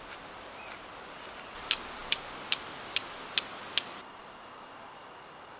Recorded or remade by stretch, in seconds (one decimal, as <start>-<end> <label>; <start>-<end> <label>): 0.0-2.0 recorded; 2.0-2.8 remade; 2.8-4.2 recorded; 4.2-5.0 remade; 5.0-5.6 recorded